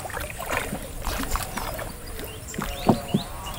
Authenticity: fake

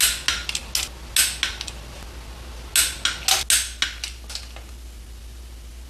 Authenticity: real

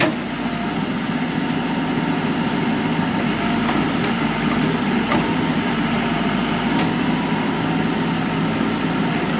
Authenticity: real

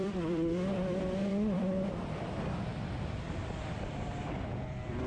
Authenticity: fake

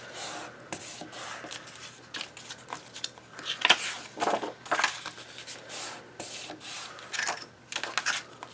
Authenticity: real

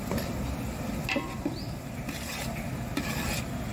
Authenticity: real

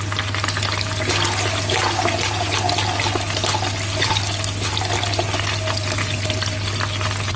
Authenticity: real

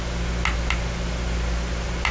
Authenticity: real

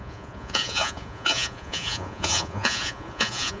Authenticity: fake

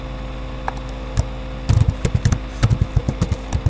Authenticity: real